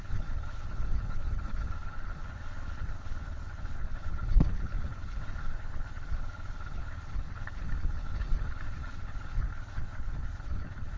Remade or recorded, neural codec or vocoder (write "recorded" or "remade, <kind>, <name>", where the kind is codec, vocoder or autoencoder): remade, codec, HILCodec